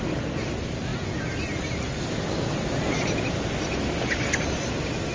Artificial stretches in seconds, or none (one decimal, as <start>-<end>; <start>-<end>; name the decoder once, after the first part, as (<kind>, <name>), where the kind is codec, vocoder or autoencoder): none